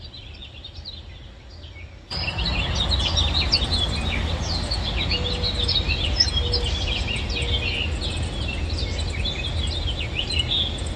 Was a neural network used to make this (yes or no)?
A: no